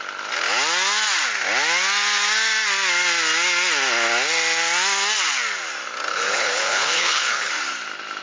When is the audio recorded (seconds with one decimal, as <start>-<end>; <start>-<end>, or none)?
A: 0.0-6.1; 7.5-8.2